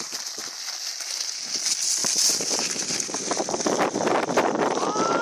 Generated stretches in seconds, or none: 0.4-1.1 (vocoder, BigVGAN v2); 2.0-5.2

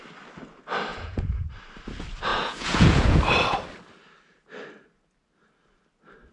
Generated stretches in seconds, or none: 0.9-1.5 (vocoder, Vocos); 2.3-3.2